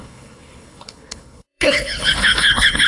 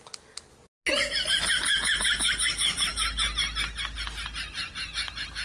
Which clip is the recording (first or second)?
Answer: second